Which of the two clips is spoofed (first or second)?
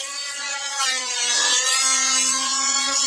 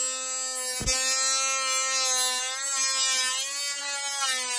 first